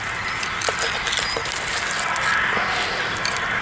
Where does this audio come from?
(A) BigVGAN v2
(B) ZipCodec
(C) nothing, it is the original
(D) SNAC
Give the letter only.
C